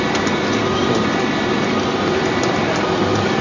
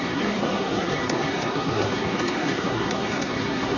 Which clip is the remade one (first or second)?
second